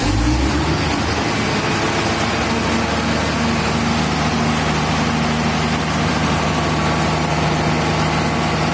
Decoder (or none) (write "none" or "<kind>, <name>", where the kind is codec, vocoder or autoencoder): none